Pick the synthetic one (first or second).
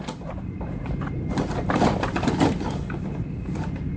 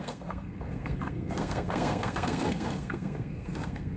second